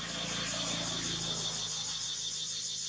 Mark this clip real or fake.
real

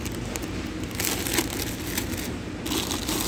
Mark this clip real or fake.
real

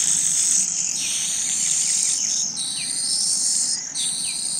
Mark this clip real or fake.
fake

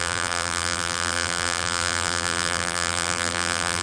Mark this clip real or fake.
fake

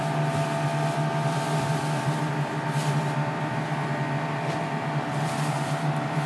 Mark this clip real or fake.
fake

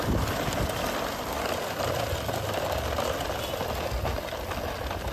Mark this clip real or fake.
real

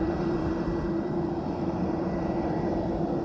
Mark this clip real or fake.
fake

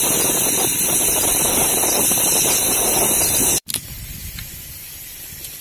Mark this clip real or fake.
real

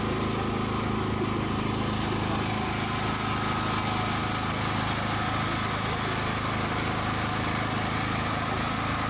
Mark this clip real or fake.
real